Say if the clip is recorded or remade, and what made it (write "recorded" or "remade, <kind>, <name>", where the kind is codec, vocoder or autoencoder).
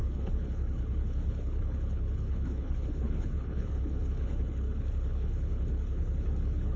remade, codec, HILCodec